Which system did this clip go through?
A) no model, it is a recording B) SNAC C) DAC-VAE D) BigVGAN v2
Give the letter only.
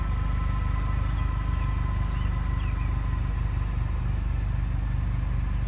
A